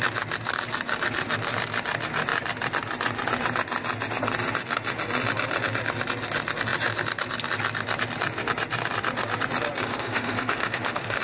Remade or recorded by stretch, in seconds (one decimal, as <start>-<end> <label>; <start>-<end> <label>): 0.0-9.9 recorded; 9.9-11.2 remade